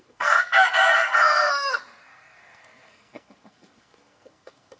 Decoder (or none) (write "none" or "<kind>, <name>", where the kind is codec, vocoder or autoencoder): codec, SNAC